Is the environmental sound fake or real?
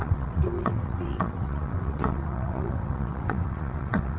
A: fake